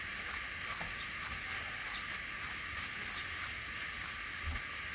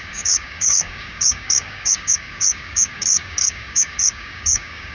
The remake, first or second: second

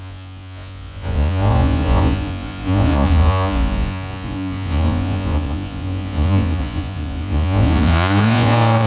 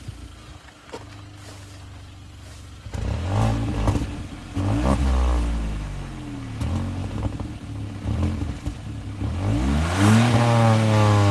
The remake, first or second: first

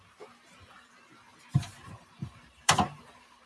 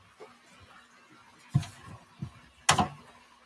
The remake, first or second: first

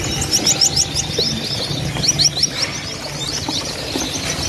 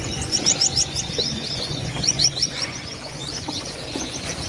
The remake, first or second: second